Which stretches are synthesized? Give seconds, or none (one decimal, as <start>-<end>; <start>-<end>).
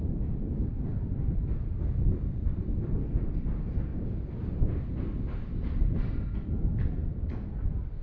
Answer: 3.9-4.8